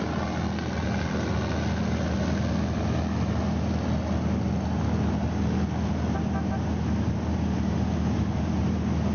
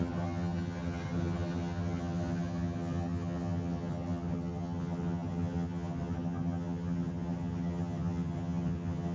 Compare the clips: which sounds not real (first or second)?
second